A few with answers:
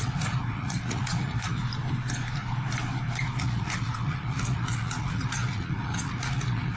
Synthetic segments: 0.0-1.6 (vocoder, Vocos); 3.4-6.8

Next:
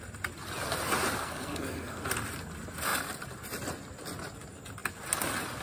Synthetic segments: 1.2-2.0 (codec, SNAC)

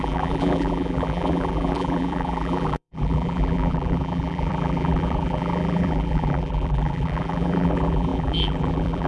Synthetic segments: 0.0-9.1 (vocoder, BigVGAN v2)